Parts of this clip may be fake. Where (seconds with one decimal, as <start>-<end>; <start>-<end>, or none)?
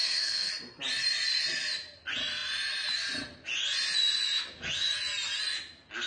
0.0-0.5